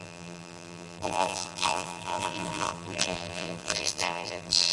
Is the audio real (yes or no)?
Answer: no